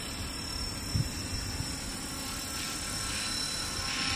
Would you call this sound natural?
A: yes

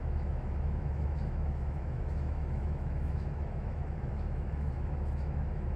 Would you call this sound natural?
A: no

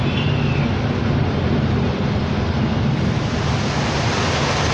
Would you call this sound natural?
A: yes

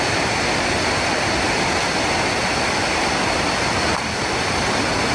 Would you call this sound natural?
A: yes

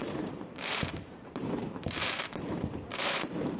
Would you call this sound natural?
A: no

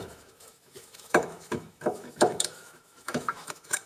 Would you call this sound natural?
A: no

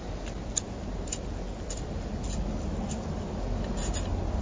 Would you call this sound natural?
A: yes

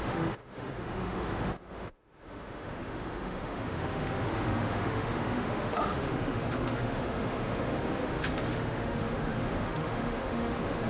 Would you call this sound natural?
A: no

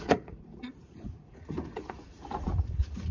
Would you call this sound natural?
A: no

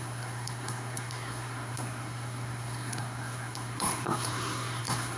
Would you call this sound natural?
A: no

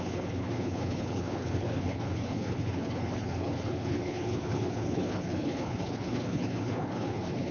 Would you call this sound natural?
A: no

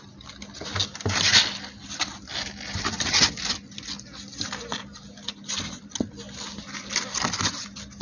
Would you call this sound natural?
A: yes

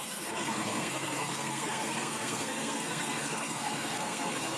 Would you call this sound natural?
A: no